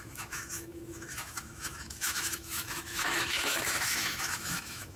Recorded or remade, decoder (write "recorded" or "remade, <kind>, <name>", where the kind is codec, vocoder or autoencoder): remade, autoencoder, DAC-VAE